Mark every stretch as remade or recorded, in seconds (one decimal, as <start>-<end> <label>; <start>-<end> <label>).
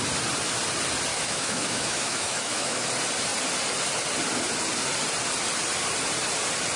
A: 0.0-1.1 recorded; 1.1-2.9 remade; 2.9-6.8 recorded